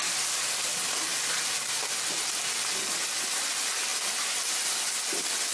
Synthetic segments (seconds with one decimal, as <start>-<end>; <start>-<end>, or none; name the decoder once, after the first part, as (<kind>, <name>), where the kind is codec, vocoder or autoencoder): none